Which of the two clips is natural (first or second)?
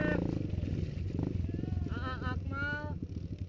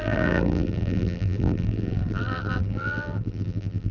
first